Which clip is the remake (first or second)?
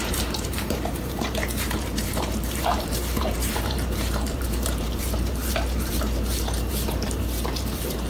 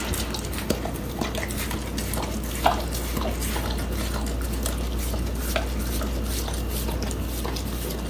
first